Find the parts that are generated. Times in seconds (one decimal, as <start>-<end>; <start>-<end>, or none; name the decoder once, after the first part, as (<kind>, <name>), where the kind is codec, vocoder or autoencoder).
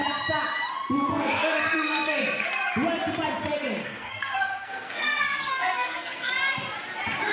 1.1-2.5 (codec, SNAC); 3.8-6.3